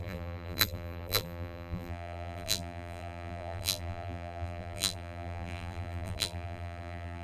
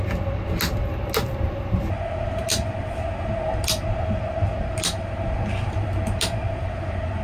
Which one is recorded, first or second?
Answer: second